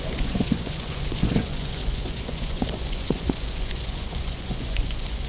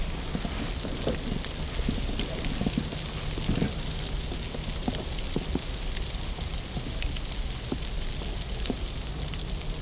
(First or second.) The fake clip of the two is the first